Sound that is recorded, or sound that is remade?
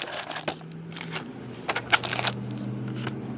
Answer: recorded